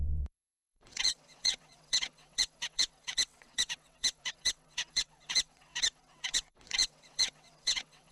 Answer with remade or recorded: remade